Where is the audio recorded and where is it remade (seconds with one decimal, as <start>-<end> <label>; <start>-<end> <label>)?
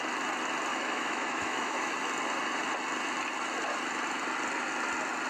0.0-0.7 recorded; 0.7-1.9 remade; 1.9-5.3 recorded